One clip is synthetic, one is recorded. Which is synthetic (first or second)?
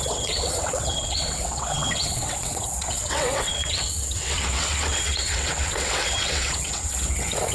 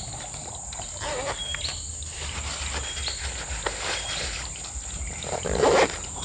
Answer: first